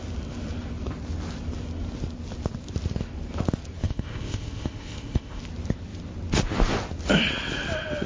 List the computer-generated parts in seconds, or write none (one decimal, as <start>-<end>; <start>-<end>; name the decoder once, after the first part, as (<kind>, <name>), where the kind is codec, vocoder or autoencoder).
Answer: 3.8-5.4 (codec, ZipCodec)